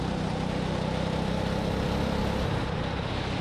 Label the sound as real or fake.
real